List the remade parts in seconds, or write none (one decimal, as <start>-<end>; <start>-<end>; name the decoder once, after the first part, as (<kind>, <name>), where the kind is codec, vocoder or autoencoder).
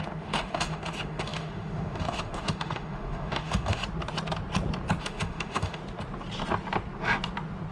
0.0-3.8 (autoencoder, DAC-VAE); 5.0-5.8